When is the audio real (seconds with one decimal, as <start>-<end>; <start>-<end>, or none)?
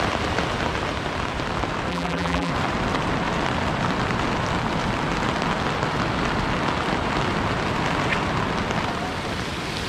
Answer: 0.0-1.9; 2.5-9.9